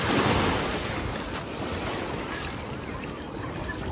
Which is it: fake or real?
real